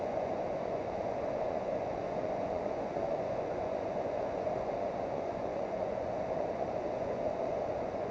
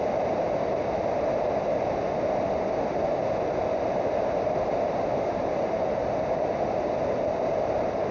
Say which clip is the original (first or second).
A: second